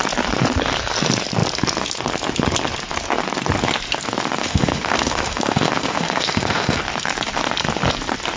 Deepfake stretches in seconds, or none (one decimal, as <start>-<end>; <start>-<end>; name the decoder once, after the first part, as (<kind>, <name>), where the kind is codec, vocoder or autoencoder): 4.4-6.8 (autoencoder, DAC-VAE)